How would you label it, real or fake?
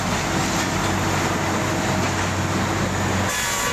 real